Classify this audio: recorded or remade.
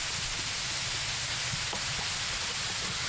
recorded